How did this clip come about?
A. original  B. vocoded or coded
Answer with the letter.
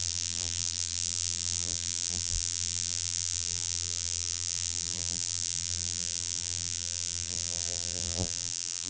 B